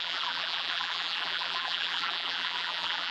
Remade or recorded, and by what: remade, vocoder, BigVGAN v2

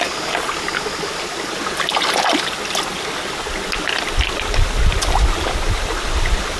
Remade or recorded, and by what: recorded